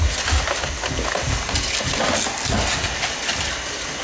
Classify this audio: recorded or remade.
recorded